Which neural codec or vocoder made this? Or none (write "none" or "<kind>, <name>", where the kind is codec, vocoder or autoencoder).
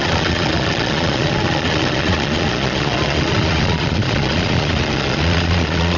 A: vocoder, Vocos